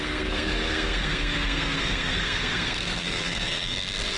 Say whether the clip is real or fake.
fake